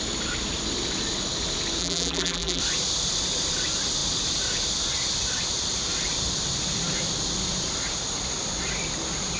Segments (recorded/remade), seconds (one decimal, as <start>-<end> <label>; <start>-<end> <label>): 0.0-1.8 recorded; 1.8-2.6 remade; 2.6-9.4 recorded